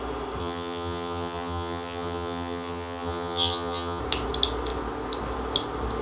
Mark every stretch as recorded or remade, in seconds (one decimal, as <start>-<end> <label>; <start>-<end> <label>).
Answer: 0.0-0.4 recorded; 0.4-4.0 remade; 4.0-6.0 recorded